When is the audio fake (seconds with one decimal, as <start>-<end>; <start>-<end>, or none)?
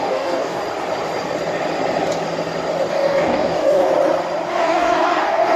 0.0-0.6; 2.9-3.9; 4.5-5.6